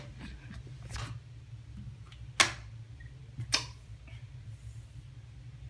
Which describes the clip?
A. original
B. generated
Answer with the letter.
A